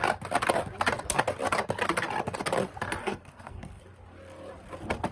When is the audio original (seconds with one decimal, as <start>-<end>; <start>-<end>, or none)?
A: 0.0-3.0; 3.8-5.1